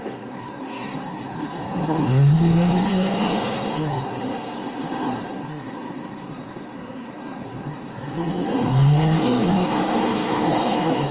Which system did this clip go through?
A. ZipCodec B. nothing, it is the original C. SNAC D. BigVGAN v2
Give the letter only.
C